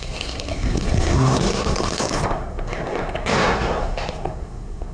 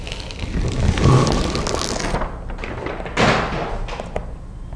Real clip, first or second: second